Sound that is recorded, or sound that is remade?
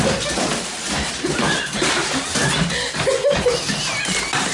recorded